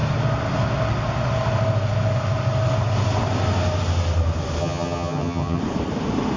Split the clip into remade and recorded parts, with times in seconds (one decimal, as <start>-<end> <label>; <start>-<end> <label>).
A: 0.0-4.6 recorded; 4.6-5.6 remade; 5.6-6.4 recorded